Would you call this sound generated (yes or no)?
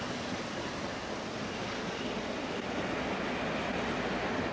no